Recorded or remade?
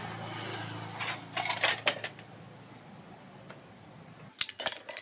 recorded